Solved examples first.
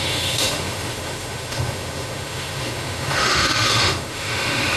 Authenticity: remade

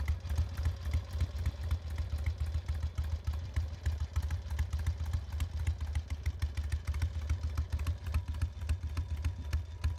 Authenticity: recorded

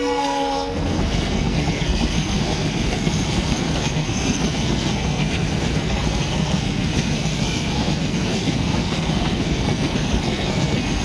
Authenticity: remade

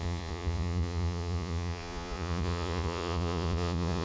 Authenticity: remade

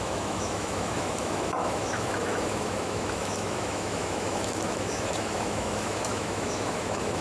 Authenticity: remade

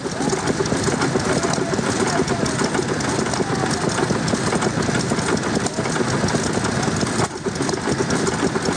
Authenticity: recorded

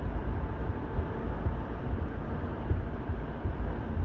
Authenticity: recorded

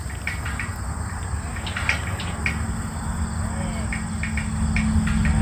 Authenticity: recorded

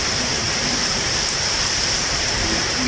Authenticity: remade